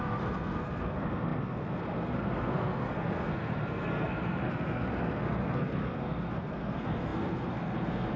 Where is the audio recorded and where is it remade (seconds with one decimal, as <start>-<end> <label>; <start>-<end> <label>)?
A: 0.0-8.2 remade